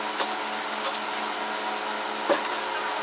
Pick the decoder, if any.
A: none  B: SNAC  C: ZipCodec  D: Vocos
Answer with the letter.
A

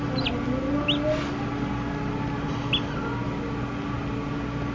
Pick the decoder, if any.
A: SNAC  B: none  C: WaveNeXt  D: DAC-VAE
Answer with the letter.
B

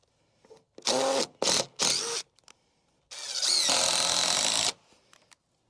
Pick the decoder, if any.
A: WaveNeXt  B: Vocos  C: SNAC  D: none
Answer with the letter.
D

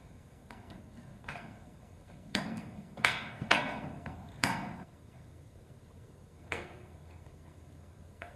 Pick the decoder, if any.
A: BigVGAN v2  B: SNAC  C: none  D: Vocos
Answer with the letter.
B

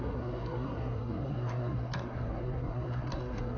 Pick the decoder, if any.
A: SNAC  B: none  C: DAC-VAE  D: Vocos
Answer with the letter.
A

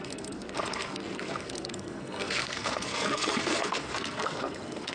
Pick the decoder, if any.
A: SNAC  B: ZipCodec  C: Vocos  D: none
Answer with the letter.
A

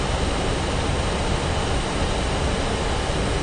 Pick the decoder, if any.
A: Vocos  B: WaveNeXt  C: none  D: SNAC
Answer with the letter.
C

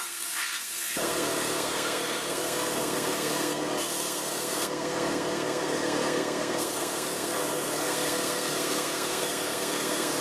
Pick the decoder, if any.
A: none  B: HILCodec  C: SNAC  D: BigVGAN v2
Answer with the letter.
C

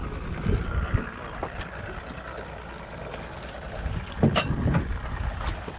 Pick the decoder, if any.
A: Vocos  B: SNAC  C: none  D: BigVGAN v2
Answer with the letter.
C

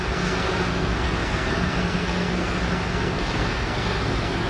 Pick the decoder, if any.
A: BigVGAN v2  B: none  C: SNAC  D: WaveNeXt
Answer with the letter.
C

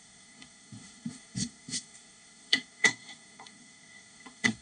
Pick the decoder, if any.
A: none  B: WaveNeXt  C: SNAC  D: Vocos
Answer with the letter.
C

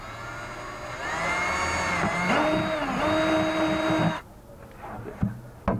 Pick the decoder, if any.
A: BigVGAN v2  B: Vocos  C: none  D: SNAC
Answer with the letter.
C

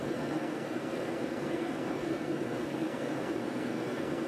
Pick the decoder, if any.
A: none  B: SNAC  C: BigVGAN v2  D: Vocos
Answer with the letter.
B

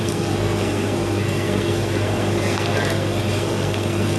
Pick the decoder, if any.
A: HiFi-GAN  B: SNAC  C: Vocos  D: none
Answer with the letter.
B